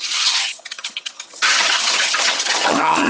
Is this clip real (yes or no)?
no